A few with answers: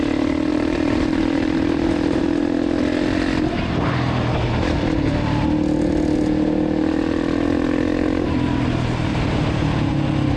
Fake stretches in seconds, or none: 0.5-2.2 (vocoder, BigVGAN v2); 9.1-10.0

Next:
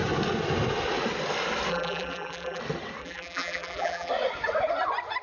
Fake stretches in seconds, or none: 1.7-2.6 (vocoder, BigVGAN v2); 3.0-4.1

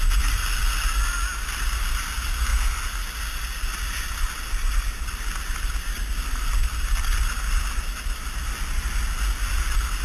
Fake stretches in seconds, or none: none

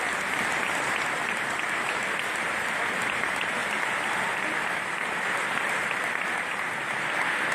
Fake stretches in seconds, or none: 0.0-3.6 (vocoder, BigVGAN v2); 4.8-7.5